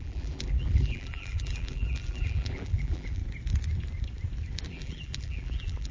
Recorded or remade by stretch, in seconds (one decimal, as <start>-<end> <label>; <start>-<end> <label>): 0.0-3.2 remade; 3.2-4.7 recorded; 4.7-5.9 remade